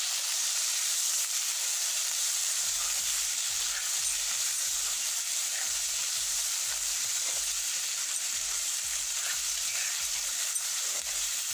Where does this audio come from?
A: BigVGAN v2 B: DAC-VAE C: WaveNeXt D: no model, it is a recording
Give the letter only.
A